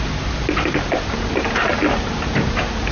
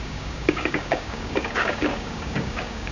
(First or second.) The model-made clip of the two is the second